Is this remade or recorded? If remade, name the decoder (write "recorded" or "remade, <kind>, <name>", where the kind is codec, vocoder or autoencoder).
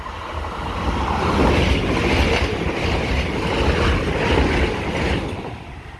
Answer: recorded